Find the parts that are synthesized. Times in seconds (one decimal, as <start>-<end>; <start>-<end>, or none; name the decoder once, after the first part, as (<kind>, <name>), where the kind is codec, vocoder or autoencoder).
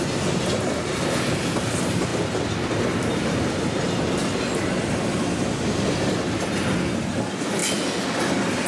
none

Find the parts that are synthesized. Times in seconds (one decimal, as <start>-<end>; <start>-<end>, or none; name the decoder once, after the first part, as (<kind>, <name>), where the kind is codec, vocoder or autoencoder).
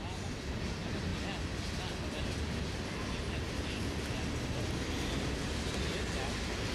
none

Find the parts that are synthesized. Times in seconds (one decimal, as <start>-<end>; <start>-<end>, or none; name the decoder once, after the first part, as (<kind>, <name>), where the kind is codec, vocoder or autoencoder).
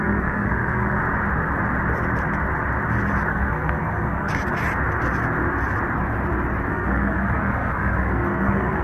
0.0-1.0 (codec, SNAC); 3.3-4.3; 6.7-8.8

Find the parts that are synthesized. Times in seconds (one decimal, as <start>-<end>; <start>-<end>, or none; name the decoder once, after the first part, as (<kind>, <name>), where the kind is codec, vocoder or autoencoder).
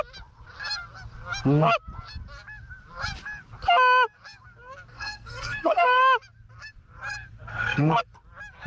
4.9-6.0 (codec, SNAC); 7.5-8.0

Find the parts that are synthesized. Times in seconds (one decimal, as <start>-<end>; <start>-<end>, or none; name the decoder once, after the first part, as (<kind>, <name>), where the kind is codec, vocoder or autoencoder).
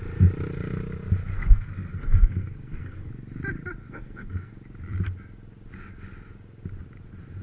1.3-3.1 (codec, SNAC); 3.8-4.5